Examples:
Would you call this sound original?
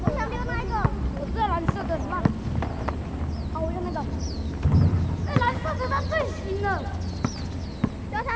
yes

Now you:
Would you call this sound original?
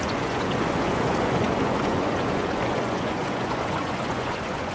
no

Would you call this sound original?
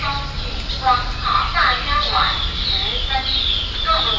yes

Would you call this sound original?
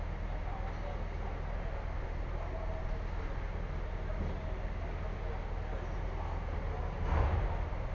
yes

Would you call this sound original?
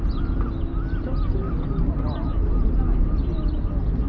yes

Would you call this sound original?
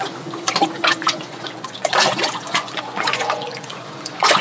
no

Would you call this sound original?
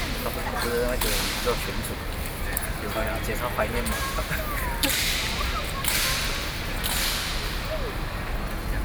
yes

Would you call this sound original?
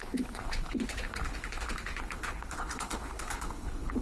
no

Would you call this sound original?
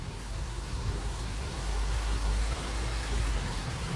no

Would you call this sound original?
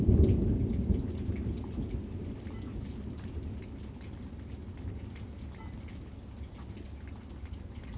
yes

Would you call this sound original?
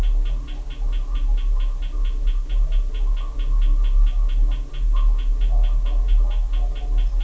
yes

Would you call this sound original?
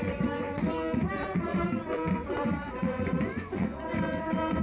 no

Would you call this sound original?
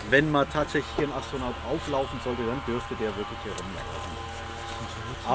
yes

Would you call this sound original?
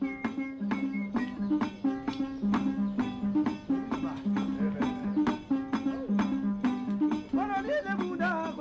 yes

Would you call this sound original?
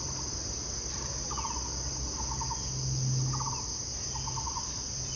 yes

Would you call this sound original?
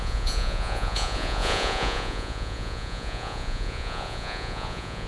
no